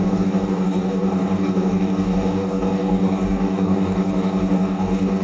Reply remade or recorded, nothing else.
remade